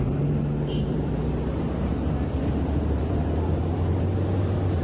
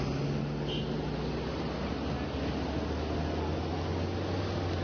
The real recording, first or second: second